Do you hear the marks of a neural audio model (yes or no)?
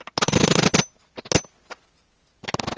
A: no